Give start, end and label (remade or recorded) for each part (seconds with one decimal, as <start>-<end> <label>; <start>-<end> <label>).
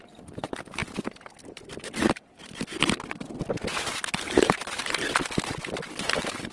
0.0-6.5 recorded